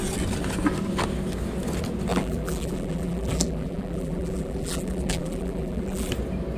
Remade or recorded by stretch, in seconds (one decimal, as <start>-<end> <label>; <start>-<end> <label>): 0.0-2.1 recorded; 2.1-6.1 remade; 6.1-6.6 recorded